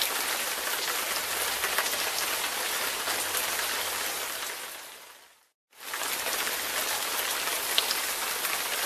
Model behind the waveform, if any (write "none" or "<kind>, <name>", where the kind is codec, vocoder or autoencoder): none